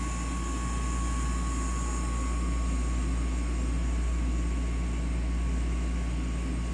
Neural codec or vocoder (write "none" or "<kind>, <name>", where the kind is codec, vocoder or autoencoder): none